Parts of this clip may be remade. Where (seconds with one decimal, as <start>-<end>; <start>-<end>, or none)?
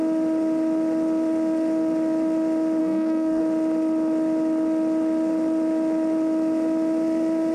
2.8-3.4